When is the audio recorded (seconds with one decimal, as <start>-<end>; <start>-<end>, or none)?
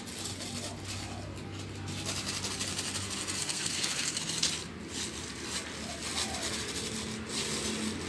0.0-3.4; 4.2-8.1